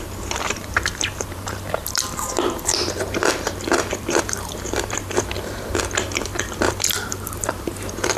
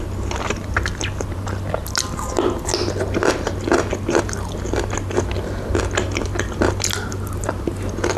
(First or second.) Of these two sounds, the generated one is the first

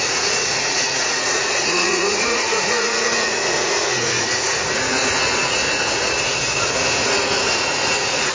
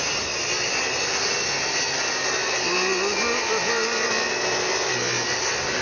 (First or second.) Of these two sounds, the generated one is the first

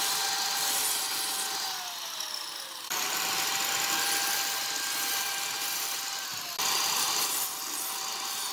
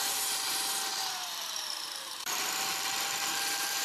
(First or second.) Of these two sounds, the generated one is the second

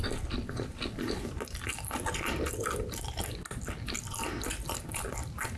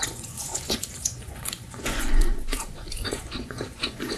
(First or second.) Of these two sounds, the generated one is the second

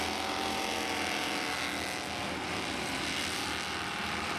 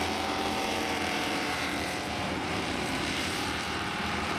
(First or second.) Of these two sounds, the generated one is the second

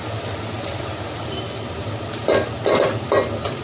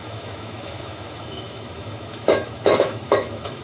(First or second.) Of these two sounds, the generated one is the second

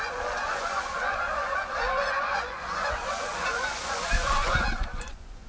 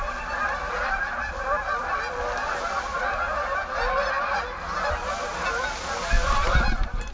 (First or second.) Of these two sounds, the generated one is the first